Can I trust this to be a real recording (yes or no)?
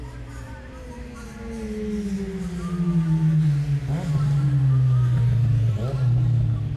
yes